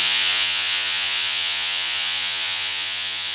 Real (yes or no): no